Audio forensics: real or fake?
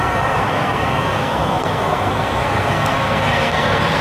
fake